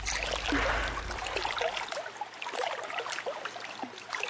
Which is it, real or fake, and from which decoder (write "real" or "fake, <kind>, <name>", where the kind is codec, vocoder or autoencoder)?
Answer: real